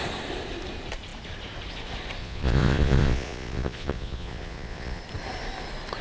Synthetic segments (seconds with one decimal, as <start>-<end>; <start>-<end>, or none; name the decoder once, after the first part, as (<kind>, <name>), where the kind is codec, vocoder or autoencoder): 2.2-5.0 (vocoder, Vocos)